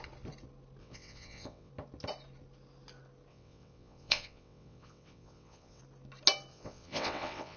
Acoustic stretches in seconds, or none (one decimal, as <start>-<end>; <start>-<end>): 0.0-0.8; 1.7-3.3; 5.8-6.5